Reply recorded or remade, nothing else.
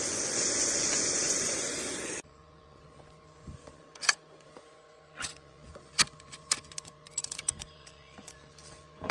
remade